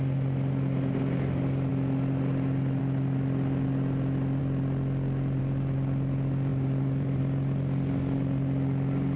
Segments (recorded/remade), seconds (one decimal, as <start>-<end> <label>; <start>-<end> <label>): 0.0-6.5 recorded; 6.5-7.2 remade; 7.2-9.2 recorded